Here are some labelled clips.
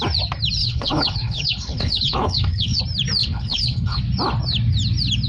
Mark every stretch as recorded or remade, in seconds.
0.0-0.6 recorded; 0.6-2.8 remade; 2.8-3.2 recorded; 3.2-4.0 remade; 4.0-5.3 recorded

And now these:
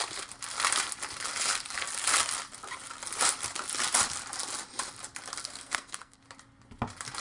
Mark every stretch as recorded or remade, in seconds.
0.0-5.4 recorded; 5.4-6.2 remade; 6.2-7.2 recorded

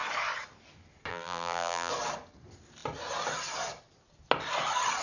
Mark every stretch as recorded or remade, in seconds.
0.0-1.1 recorded; 1.1-1.9 remade; 1.9-5.0 recorded

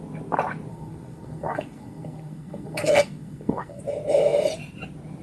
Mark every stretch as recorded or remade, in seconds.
0.0-0.7 recorded; 0.7-3.8 remade; 3.8-5.2 recorded